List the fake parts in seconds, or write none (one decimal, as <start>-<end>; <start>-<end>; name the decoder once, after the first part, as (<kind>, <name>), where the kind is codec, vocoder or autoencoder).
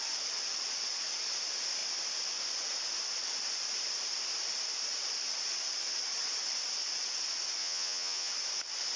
7.6-8.3 (vocoder, Vocos)